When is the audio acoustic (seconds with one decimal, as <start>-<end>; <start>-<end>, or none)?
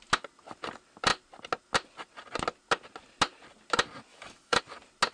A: 0.0-4.1; 4.6-5.1